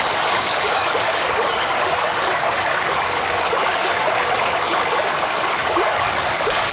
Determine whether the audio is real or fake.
fake